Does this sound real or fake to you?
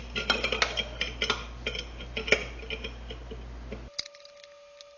real